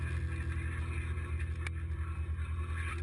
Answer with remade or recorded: recorded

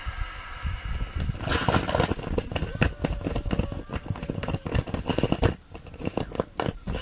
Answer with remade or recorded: recorded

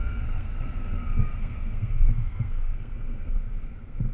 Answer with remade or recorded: remade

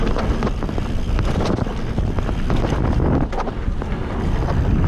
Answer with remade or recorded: recorded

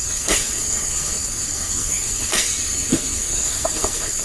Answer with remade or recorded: remade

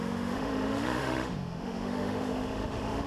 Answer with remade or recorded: remade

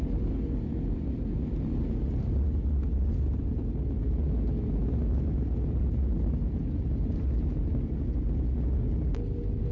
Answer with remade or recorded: recorded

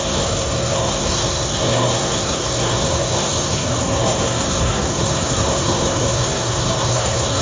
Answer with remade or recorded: remade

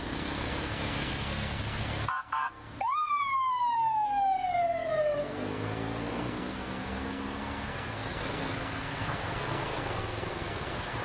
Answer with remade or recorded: remade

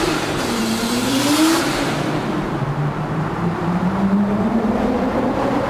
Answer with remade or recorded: remade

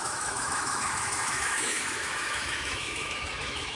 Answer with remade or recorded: remade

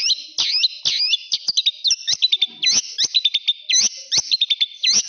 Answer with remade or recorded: recorded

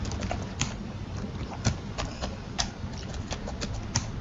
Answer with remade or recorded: recorded